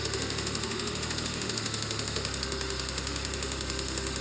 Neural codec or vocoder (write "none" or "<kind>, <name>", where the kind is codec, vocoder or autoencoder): autoencoder, DAC-VAE